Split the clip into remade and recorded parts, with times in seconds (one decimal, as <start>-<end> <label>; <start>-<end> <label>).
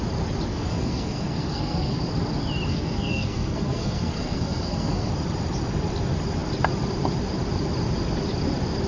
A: 0.0-0.5 recorded; 0.5-2.1 remade; 2.1-2.7 recorded; 2.7-5.1 remade; 5.1-8.9 recorded